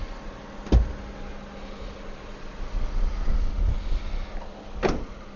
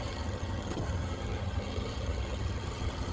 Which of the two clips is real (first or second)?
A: first